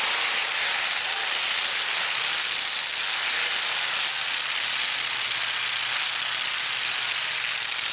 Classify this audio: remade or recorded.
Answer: recorded